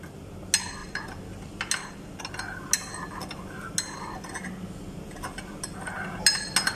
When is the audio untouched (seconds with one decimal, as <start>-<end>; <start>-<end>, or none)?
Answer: 0.0-6.8